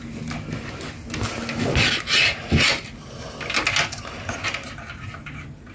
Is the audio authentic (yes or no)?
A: yes